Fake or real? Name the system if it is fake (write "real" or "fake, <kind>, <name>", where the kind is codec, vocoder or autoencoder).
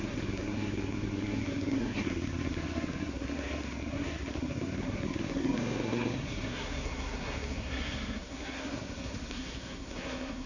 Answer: fake, codec, SNAC